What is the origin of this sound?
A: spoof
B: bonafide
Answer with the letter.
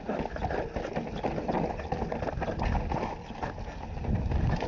B